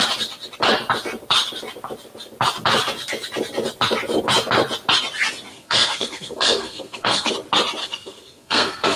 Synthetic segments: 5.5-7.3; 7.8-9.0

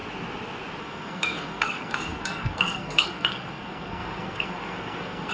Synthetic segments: 0.8-5.3